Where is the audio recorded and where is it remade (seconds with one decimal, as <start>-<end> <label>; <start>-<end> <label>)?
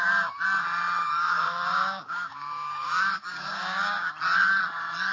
0.0-1.0 recorded; 1.0-4.1 remade; 4.1-5.1 recorded